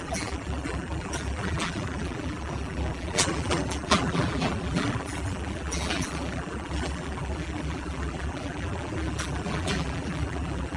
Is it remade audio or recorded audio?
remade